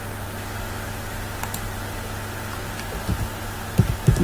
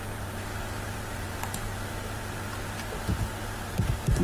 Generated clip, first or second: second